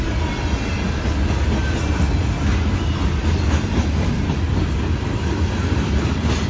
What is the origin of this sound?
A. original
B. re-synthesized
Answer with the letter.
A